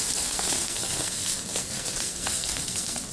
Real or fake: fake